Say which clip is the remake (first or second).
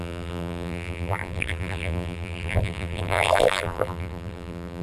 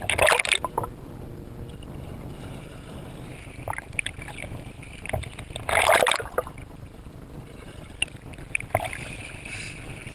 first